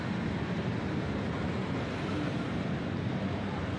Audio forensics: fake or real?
real